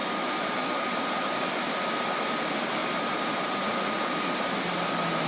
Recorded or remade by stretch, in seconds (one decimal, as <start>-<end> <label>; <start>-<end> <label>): 0.0-1.4 remade; 1.4-2.8 recorded; 2.8-4.8 remade; 4.8-5.3 recorded